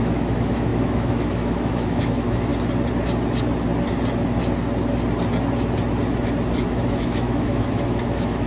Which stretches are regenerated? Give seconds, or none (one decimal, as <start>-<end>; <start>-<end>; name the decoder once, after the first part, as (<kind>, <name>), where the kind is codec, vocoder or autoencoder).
0.0-2.5 (autoencoder, DAC-VAE); 6.7-8.5